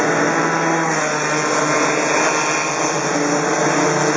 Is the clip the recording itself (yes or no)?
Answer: yes